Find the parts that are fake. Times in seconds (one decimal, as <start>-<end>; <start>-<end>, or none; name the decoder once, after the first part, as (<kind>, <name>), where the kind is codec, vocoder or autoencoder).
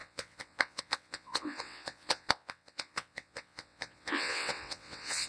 0.0-5.3 (vocoder, WaveNeXt)